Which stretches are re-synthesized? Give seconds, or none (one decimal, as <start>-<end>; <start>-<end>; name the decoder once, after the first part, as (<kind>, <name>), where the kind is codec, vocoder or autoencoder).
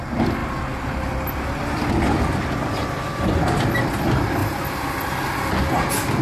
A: none